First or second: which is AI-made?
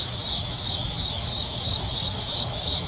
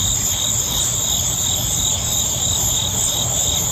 first